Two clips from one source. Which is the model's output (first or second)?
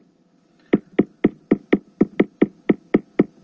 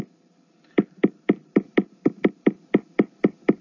second